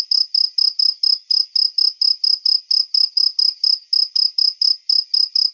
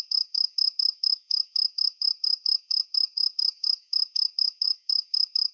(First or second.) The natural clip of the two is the first